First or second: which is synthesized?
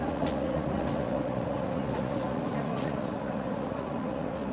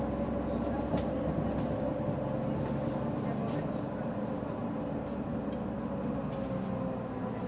first